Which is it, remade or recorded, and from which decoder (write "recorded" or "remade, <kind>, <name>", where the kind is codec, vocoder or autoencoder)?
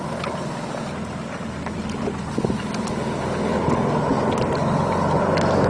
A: recorded